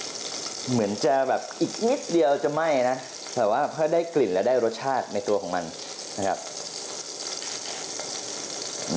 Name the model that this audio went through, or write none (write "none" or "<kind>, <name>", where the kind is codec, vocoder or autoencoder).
none